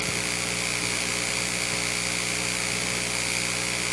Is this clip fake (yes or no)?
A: no